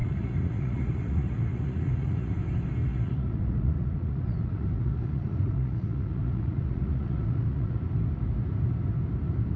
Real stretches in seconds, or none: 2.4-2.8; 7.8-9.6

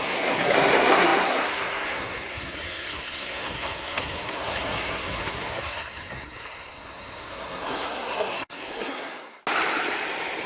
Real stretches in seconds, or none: 9.4-10.5

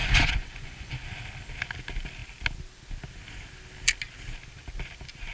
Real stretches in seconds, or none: 0.9-5.3

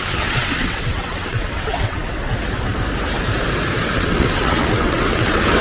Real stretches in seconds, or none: 2.3-3.8

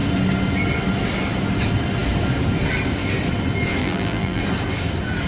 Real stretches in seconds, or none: 0.0-3.8; 4.4-5.3

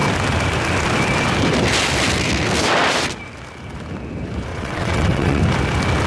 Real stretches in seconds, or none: 0.0-4.5; 5.4-6.1

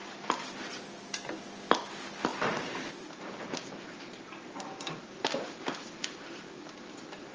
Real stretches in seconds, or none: 0.7-2.3; 6.5-7.3

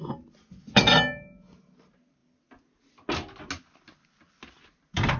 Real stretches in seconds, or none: 0.0-5.2